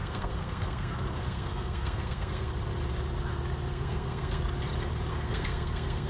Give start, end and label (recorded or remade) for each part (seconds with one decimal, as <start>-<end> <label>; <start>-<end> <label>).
0.0-2.5 remade; 2.5-3.7 recorded; 3.7-4.4 remade; 4.4-5.1 recorded; 5.1-6.1 remade